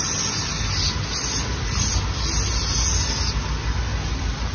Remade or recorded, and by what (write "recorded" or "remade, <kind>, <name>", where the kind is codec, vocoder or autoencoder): recorded